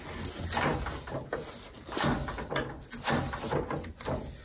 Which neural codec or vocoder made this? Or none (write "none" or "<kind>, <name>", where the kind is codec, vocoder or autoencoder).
none